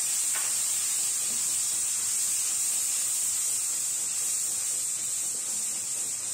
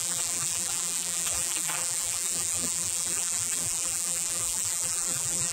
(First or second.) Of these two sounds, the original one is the first